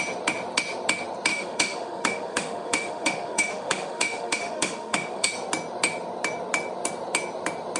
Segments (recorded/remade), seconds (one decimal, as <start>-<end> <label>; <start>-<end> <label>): 0.0-1.3 recorded; 1.3-5.3 remade; 5.3-7.8 recorded